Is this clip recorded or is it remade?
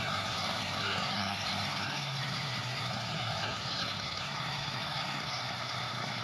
remade